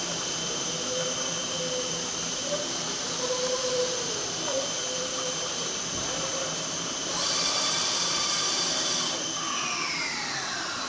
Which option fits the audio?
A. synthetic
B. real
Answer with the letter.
A